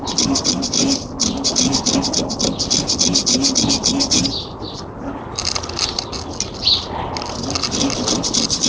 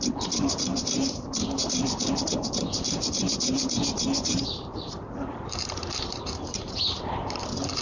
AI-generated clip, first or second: second